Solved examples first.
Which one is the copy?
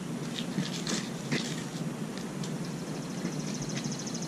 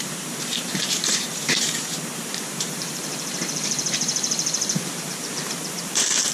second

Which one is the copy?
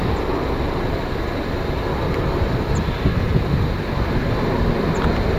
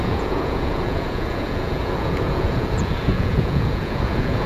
second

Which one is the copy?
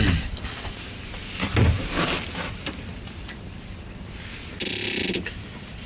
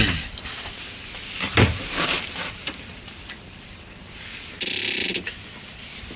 second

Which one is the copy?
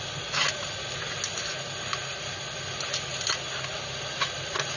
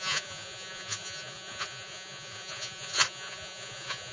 second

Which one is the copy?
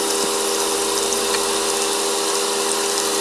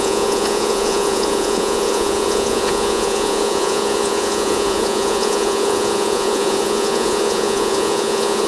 second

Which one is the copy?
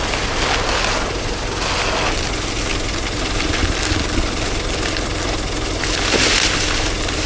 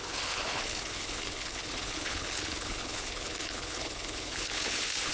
second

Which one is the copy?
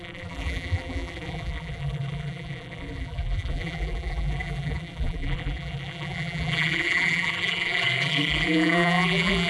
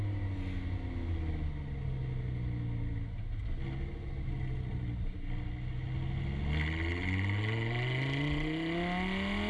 first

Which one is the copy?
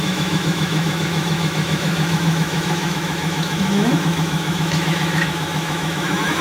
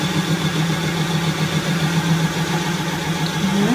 first